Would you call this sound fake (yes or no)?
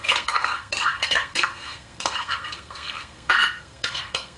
yes